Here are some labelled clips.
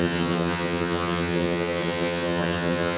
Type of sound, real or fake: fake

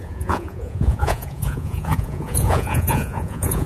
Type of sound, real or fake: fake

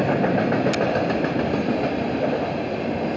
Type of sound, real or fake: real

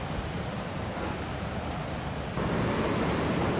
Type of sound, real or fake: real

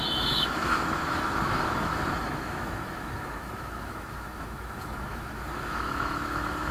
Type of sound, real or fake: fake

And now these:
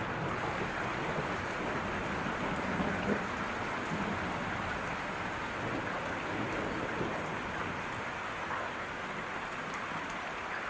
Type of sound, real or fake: real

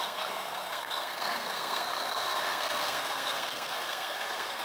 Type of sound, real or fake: fake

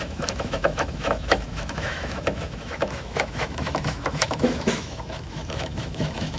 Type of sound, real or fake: fake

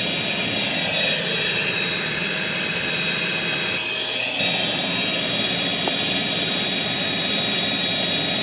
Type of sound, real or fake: real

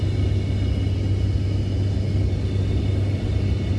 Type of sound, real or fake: real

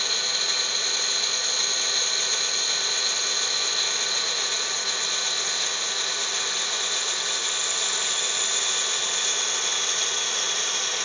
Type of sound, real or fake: real